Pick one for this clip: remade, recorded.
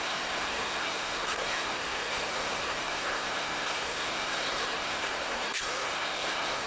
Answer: remade